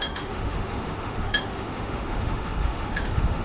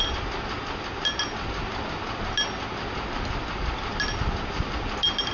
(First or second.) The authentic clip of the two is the second